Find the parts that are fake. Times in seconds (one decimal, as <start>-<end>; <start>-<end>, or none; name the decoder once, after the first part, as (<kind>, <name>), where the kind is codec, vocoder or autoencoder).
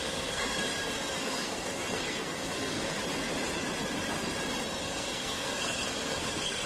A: 0.0-0.7 (codec, SNAC); 1.2-3.0; 4.8-6.7